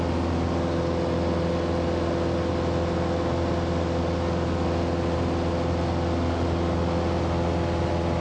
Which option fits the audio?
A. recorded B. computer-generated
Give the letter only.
A